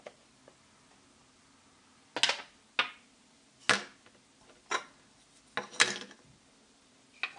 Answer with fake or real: real